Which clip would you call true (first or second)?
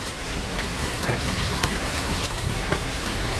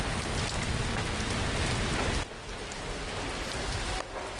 second